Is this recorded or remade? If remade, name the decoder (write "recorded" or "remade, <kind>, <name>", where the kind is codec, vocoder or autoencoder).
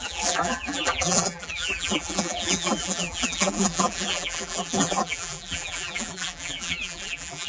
remade, vocoder, BigVGAN v2